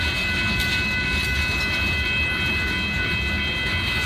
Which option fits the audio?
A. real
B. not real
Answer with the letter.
A